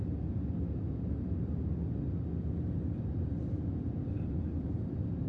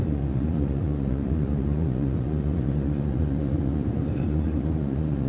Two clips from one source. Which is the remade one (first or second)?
second